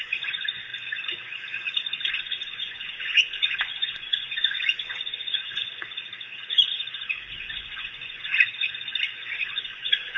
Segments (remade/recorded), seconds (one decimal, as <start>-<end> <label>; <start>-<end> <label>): 0.0-0.7 remade; 0.7-2.1 recorded; 2.1-5.6 remade; 5.6-7.3 recorded; 7.3-8.3 remade; 8.3-9.4 recorded; 9.4-10.2 remade